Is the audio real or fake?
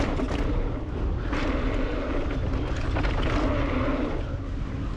real